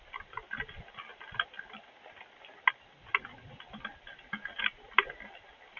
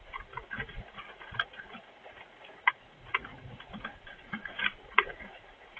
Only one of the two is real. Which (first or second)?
first